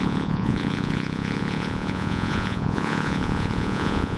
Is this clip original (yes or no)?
no